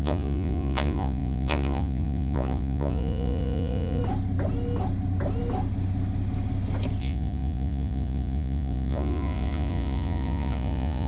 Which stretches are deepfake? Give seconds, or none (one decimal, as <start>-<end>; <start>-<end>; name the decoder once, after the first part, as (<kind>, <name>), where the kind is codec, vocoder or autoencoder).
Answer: 0.0-4.0 (vocoder, Vocos); 7.0-11.1